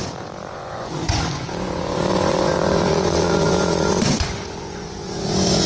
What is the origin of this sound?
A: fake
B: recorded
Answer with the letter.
A